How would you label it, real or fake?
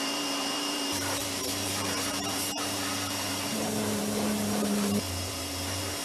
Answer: fake